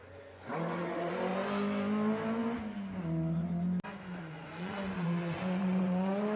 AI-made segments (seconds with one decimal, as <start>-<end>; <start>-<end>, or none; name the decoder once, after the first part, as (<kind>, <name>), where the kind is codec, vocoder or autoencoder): 0.0-1.3 (vocoder, Vocos); 4.2-6.4